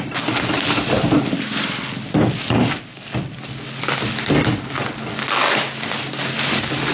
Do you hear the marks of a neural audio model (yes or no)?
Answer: no